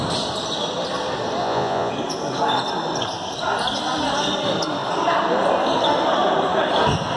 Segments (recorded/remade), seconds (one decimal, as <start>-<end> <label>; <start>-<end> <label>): 0.0-1.4 recorded; 1.4-1.9 remade; 1.9-7.2 recorded